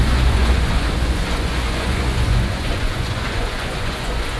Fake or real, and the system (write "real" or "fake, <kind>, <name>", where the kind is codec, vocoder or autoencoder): fake, vocoder, Vocos